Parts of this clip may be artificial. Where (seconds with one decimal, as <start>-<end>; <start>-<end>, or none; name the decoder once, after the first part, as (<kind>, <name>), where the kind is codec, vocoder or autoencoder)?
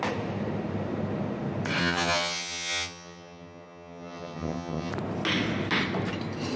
1.8-4.9 (vocoder, HiFi-GAN)